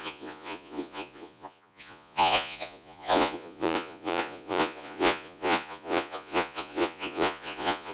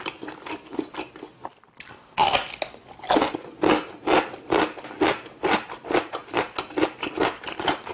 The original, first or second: second